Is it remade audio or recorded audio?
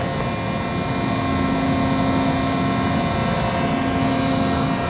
recorded